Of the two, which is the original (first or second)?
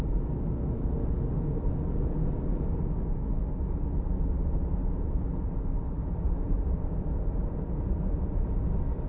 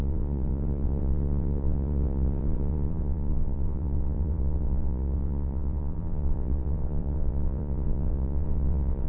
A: first